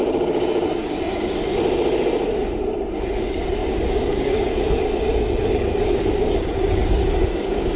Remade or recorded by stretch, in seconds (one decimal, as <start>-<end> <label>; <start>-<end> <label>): 0.0-1.4 remade; 1.4-3.2 recorded; 3.2-4.5 remade; 4.5-5.5 recorded; 5.5-7.8 remade